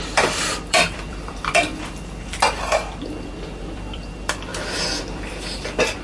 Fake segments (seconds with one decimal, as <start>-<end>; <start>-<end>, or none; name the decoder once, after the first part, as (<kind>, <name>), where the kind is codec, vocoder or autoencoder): 0.0-1.7 (vocoder, BigVGAN v2); 3.6-4.5; 5.0-6.0